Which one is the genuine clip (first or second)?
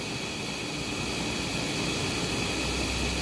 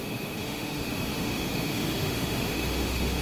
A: first